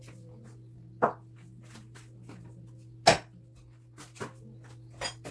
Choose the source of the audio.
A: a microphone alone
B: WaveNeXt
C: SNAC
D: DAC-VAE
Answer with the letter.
A